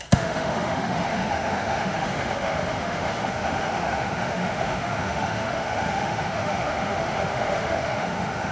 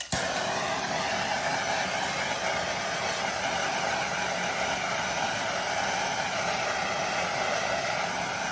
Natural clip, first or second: second